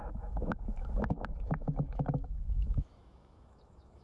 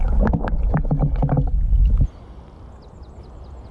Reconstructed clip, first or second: first